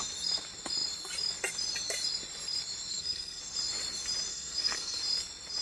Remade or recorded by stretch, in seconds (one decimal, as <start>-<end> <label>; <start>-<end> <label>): 0.0-2.9 recorded; 2.9-3.4 remade; 3.4-4.3 recorded; 4.3-5.0 remade; 5.0-5.6 recorded